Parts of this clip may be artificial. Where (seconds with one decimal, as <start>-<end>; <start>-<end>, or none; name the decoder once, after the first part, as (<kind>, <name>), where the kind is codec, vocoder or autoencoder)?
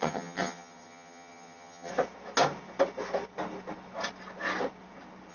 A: 0.0-1.9 (vocoder, HiFi-GAN)